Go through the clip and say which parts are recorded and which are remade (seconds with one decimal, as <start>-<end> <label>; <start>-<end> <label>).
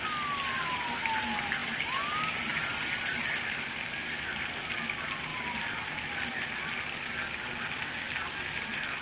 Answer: 0.0-9.0 recorded